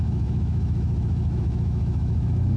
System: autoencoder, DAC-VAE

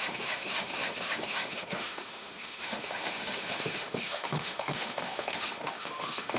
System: autoencoder, DAC-VAE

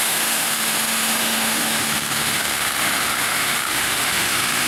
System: autoencoder, DAC-VAE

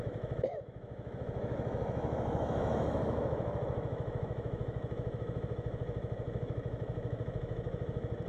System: autoencoder, DAC-VAE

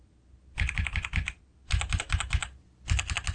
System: none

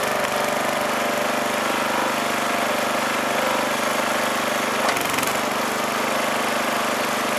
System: none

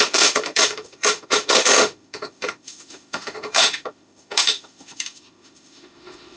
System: autoencoder, DAC-VAE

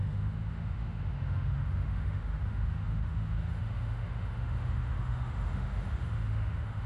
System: autoencoder, DAC-VAE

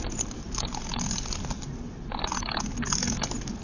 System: none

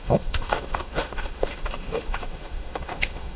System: autoencoder, DAC-VAE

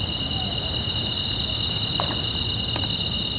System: none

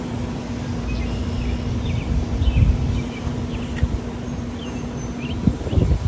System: none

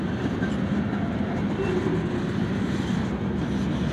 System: none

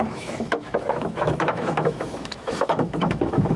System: autoencoder, DAC-VAE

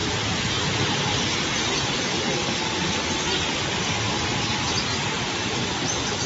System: none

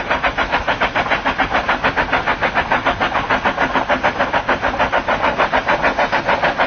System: none